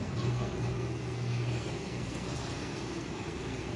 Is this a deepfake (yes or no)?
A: yes